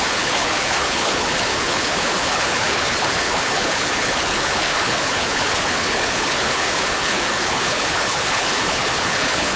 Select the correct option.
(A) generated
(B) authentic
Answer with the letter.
A